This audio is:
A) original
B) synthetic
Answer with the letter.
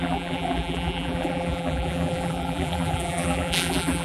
B